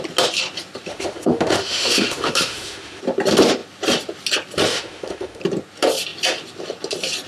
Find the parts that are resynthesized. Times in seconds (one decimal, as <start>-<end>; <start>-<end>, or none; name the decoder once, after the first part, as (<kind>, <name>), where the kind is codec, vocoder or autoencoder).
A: 0.9-3.0 (autoencoder, DAC-VAE); 4.7-5.4